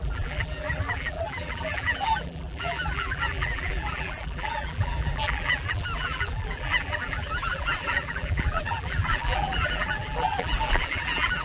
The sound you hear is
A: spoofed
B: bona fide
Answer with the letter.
A